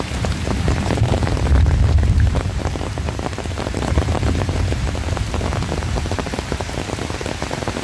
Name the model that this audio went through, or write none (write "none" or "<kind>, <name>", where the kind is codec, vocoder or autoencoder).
vocoder, BigVGAN v2